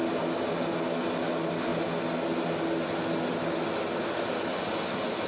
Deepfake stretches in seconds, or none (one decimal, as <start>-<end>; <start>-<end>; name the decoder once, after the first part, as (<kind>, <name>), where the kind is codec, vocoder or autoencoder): none

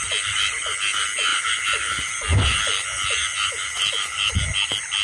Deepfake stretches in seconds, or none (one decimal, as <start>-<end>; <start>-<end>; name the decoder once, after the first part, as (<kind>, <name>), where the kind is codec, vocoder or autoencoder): none